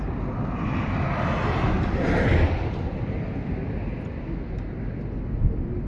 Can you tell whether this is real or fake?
real